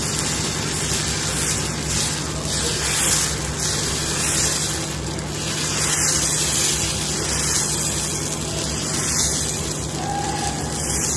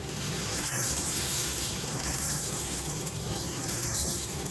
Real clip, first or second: first